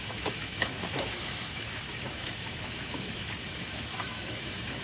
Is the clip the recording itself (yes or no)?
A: no